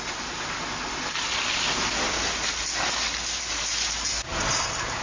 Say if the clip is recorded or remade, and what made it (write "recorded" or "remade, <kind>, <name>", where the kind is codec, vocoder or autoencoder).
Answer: recorded